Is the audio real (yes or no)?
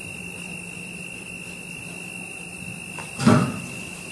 yes